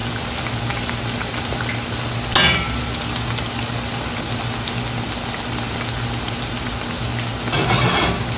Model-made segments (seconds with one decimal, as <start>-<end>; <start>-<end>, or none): none